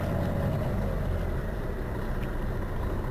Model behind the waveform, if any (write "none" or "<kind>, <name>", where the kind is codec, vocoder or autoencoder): none